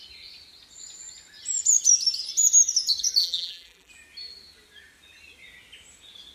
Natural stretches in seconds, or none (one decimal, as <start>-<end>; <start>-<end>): 0.0-3.2; 3.9-6.3

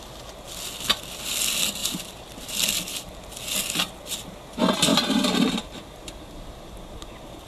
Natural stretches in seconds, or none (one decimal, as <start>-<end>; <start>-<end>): 0.0-1.8; 3.3-4.9; 7.1-7.5

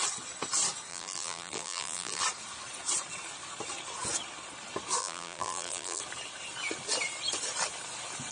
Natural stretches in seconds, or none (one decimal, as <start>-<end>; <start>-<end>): 0.0-0.9; 2.2-5.0; 6.0-8.3

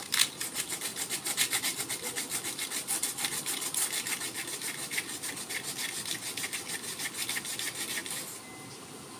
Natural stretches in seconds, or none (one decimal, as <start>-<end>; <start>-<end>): 0.0-0.9; 5.4-9.2